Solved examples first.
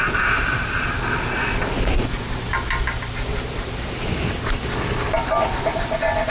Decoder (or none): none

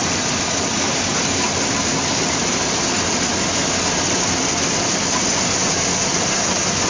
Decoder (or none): none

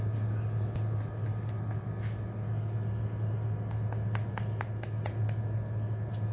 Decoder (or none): none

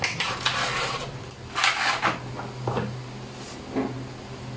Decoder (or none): none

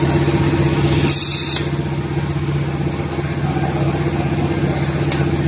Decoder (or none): none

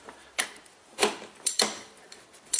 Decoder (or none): vocoder, BigVGAN v2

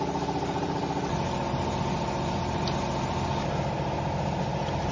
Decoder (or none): none